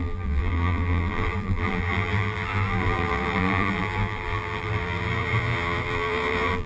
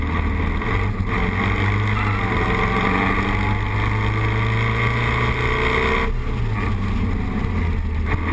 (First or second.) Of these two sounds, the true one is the second